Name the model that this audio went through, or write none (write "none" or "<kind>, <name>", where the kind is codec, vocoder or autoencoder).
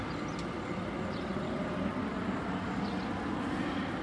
none